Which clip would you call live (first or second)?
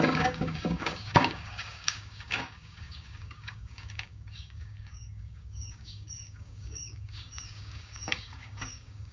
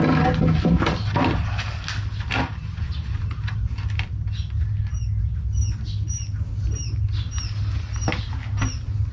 second